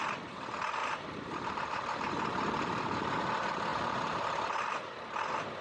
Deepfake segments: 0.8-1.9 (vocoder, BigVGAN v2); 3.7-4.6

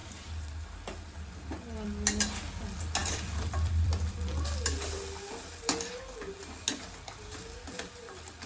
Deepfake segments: 3.0-3.9 (vocoder, BigVGAN v2)

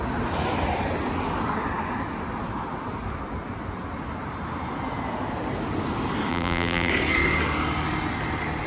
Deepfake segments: 6.3-6.9 (vocoder, BigVGAN v2)